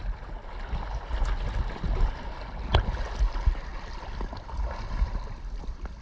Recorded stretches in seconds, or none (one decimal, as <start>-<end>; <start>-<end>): 0.0-6.0

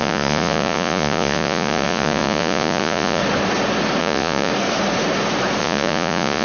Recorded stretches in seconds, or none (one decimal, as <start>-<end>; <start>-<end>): 3.2-4.0; 4.5-5.6

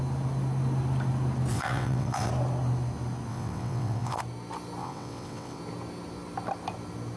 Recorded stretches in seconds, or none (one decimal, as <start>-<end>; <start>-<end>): 0.0-1.5; 2.3-3.3; 4.2-4.8; 5.6-7.2

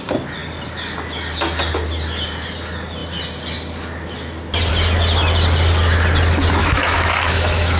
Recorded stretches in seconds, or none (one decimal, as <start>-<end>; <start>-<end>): 0.0-6.6

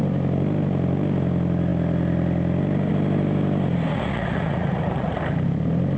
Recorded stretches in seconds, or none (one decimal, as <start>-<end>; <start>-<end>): 0.0-3.9; 5.2-6.0

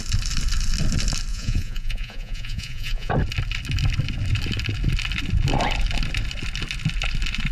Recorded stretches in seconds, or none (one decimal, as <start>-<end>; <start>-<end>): 0.0-1.3; 3.1-7.5